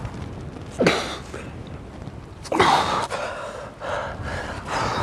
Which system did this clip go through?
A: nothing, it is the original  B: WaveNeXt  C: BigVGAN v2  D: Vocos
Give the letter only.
A